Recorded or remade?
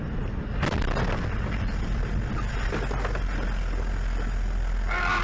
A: recorded